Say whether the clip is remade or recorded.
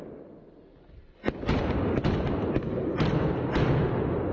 recorded